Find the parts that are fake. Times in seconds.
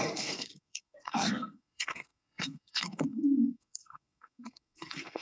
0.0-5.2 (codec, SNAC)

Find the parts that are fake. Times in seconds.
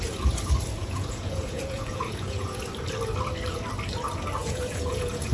0.8-2.7 (vocoder, Vocos); 4.4-5.3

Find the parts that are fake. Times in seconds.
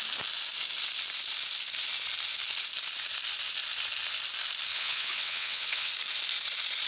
4.7-5.9 (vocoder, WaveNeXt)